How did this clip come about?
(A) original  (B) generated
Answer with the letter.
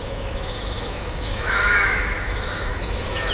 B